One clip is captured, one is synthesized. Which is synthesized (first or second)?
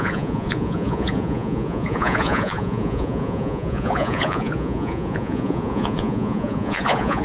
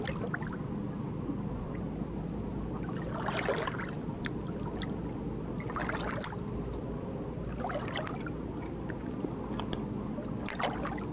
first